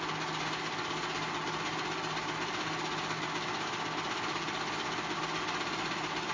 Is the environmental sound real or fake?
real